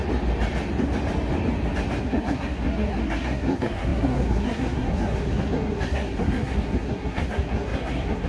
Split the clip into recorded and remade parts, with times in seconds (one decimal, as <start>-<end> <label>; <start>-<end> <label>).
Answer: 0.0-2.0 recorded; 2.0-8.3 remade